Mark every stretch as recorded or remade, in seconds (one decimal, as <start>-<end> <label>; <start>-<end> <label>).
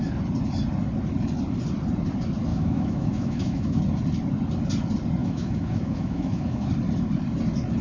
0.0-2.5 recorded; 2.5-3.8 remade; 3.8-5.2 recorded; 5.2-6.7 remade; 6.7-7.8 recorded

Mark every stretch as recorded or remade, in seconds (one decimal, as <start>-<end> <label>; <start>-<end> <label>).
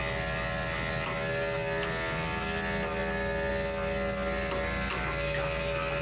0.0-6.0 recorded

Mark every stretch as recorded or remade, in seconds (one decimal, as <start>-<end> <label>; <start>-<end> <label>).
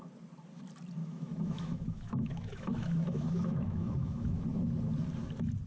0.0-1.0 recorded; 1.0-4.4 remade; 4.4-5.7 recorded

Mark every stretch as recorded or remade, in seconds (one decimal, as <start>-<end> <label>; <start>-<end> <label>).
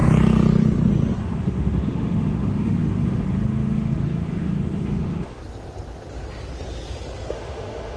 0.0-1.2 recorded; 1.2-5.4 remade; 5.4-7.3 recorded; 7.3-8.0 remade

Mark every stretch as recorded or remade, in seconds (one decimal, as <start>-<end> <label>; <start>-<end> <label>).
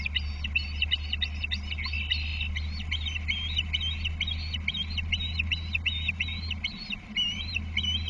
0.0-8.1 recorded